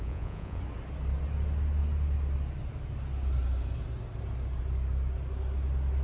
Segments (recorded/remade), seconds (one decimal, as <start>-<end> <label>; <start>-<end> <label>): 0.0-0.6 remade; 0.6-6.0 recorded